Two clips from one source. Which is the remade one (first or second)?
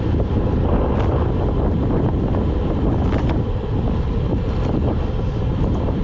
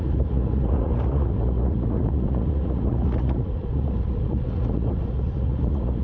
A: second